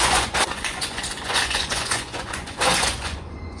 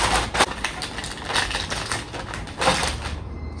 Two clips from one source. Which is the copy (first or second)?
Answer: first